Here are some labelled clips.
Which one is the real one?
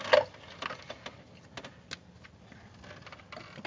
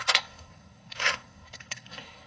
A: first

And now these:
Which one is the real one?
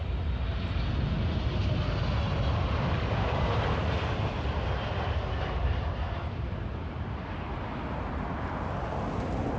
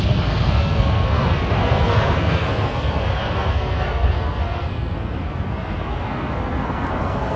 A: first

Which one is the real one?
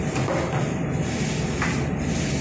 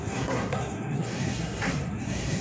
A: first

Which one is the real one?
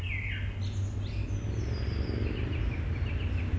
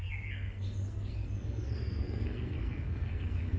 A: first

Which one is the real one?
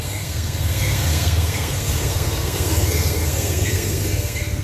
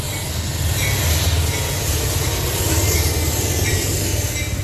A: second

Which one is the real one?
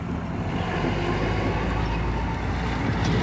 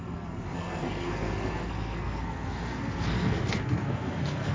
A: first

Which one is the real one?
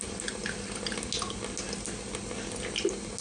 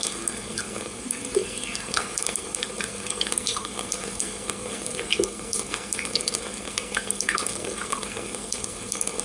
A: first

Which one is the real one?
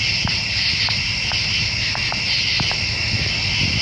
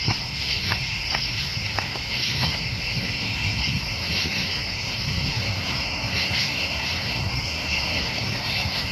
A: first